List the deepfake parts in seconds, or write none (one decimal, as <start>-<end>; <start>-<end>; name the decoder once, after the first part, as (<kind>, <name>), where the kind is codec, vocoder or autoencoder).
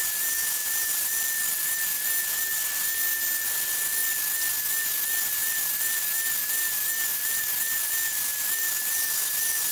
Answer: 0.6-1.6 (vocoder, BigVGAN v2); 5.4-6.0; 7.1-7.9